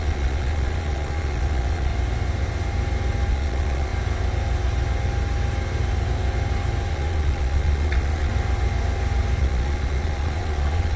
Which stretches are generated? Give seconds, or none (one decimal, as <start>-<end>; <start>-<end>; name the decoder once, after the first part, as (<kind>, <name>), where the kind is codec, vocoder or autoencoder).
0.0-1.9 (vocoder, Vocos); 3.3-3.9; 6.9-8.3; 9.4-11.0